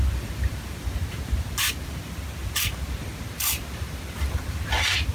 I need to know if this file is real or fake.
fake